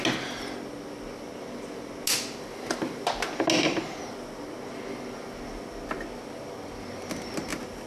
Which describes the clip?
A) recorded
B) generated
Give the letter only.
A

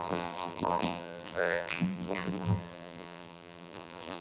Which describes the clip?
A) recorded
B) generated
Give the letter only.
B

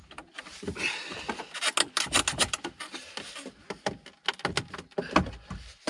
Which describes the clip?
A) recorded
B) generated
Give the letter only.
A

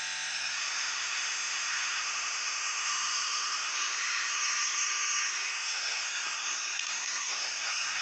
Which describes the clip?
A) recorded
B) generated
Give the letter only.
B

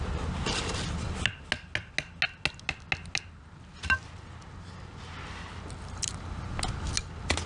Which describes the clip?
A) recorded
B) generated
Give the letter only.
A